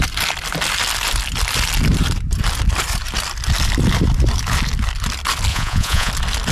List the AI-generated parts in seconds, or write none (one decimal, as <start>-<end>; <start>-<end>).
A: 5.5-6.1